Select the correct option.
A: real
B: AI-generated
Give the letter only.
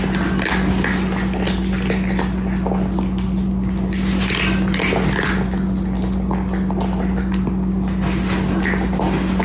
A